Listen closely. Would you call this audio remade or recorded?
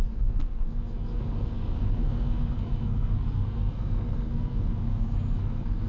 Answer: remade